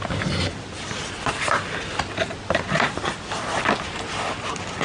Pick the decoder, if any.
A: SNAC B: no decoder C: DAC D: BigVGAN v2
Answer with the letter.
B